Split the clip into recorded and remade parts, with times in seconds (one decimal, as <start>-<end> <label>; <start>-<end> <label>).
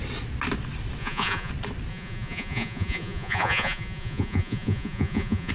0.0-1.0 recorded; 1.0-1.5 remade; 1.5-1.9 recorded; 1.9-5.5 remade